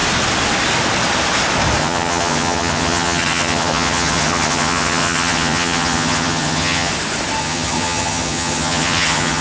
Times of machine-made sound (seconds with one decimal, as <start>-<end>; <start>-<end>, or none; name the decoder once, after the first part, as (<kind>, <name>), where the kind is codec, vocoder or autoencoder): 1.8-6.9 (vocoder, HiFi-GAN); 7.4-9.4